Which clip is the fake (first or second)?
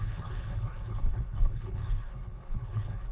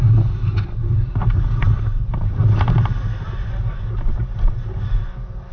first